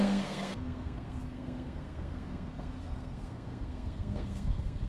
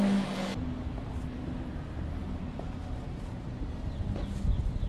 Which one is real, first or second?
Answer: second